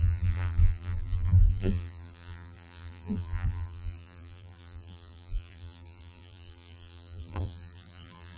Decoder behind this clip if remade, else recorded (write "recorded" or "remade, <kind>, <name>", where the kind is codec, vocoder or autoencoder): remade, vocoder, BigVGAN v2